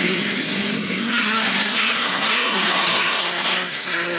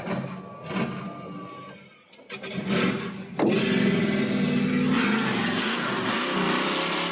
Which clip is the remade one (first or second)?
first